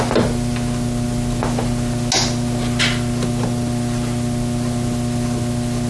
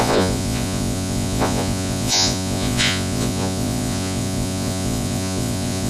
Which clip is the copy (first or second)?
second